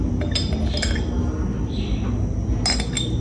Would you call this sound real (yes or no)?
yes